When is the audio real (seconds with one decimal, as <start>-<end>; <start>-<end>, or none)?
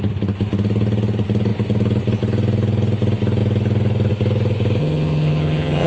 0.0-4.8